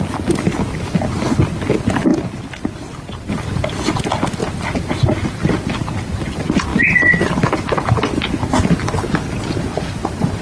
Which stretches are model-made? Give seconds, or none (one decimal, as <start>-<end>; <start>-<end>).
none